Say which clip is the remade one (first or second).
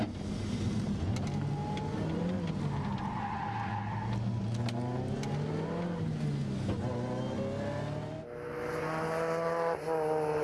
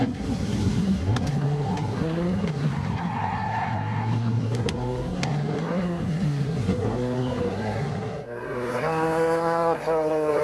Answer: second